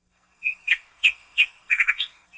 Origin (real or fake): fake